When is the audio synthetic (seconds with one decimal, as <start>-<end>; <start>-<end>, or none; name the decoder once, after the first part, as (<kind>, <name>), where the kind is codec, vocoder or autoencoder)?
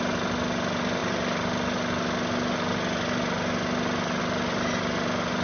none